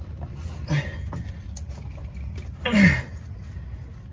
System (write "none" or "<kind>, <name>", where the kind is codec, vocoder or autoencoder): none